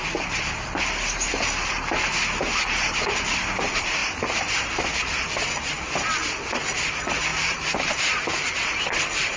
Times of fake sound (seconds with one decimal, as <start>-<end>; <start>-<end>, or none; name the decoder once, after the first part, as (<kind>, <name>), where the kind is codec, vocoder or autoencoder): 7.3-8.1 (vocoder, BigVGAN v2)